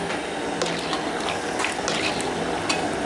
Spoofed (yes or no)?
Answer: no